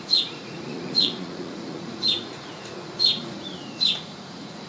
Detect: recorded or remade remade